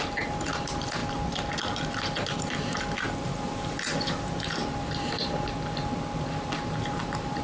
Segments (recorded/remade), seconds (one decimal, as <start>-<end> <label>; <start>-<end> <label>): 0.0-1.0 remade; 1.0-1.5 recorded; 1.5-7.4 remade